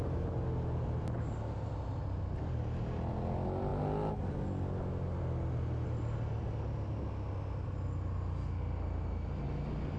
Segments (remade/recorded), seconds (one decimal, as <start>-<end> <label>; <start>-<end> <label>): 0.0-10.0 recorded